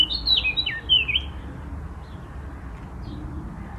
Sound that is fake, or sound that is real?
real